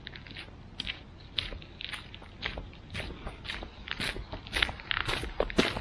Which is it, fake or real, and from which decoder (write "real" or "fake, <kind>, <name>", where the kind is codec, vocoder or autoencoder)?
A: real